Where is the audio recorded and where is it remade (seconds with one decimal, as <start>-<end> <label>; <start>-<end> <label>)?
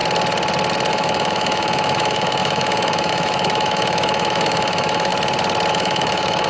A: 0.0-0.9 recorded; 0.9-5.1 remade; 5.1-5.7 recorded; 5.7-6.5 remade